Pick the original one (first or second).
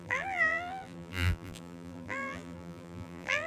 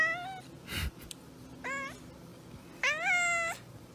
second